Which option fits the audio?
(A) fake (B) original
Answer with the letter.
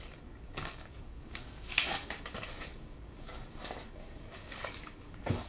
A